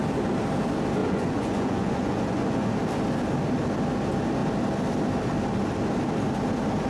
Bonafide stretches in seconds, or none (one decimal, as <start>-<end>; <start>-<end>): 0.0-1.0; 2.7-6.9